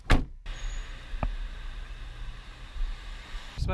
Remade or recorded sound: recorded